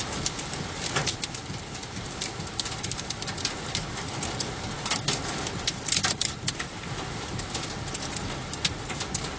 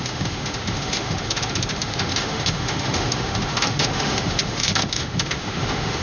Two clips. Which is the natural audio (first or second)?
first